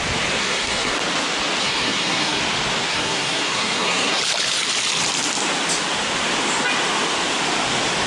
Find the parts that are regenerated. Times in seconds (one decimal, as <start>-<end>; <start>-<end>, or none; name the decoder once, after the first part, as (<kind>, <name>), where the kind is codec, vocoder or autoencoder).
0.4-0.9 (codec, SNAC); 1.6-2.4; 2.9-4.2